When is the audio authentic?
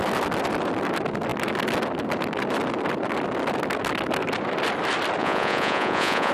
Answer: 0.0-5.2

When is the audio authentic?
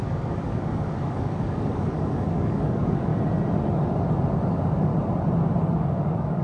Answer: 3.1-4.5; 4.9-5.6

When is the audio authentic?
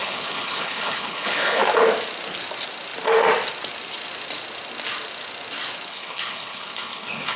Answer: 1.6-5.9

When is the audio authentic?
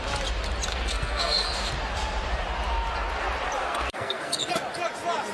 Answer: 0.0-0.7; 1.7-3.6; 4.5-5.3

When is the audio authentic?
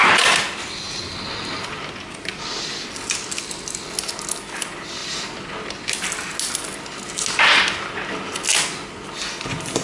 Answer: 0.0-9.8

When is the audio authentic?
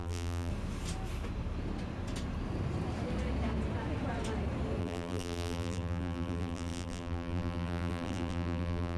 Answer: 0.5-4.8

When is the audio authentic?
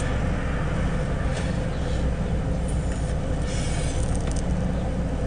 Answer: 0.0-5.3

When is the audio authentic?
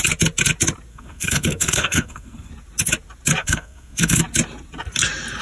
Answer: 0.0-0.9; 2.5-3.4; 4.2-5.4